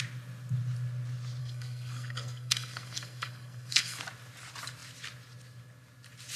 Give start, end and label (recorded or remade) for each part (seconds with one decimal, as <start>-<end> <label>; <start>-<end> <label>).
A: 0.0-1.4 recorded; 1.4-4.0 remade; 4.0-6.4 recorded